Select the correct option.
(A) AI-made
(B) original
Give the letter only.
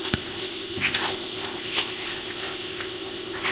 A